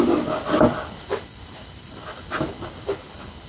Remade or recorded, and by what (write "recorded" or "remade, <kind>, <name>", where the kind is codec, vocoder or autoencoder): recorded